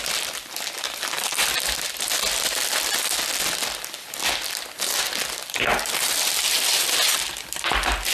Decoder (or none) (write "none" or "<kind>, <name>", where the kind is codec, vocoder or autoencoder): none